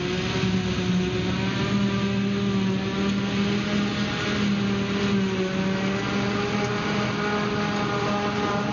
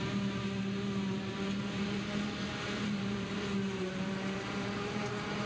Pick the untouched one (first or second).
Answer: first